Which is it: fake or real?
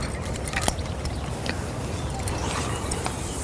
real